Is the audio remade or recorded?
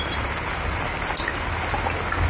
recorded